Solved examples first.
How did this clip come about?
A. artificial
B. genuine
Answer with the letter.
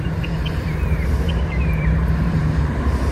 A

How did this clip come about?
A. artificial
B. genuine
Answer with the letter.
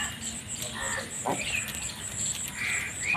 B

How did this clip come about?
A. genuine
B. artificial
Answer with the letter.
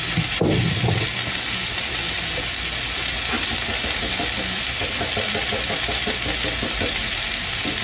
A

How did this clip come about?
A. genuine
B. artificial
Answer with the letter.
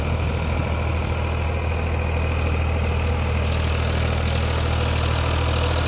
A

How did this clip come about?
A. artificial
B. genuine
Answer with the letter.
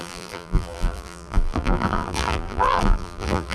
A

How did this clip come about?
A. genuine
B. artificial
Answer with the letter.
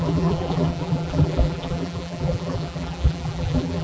B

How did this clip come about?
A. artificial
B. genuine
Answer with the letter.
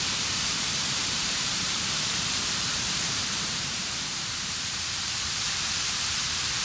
A